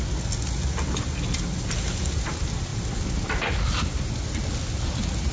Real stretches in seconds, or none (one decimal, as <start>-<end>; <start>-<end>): 0.0-5.3